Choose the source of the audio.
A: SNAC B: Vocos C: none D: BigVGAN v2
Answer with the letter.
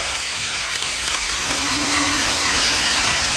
A